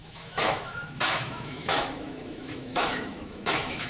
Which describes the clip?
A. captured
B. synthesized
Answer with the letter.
B